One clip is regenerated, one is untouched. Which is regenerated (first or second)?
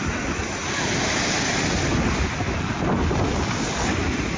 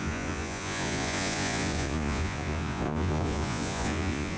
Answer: second